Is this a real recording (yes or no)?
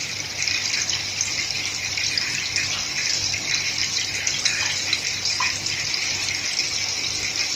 yes